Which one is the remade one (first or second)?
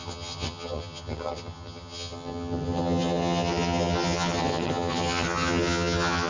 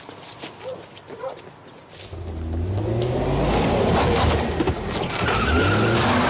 first